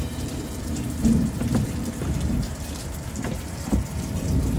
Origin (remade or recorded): remade